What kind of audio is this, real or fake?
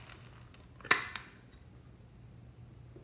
real